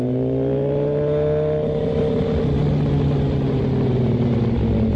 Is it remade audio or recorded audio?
recorded